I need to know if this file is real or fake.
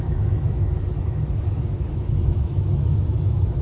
fake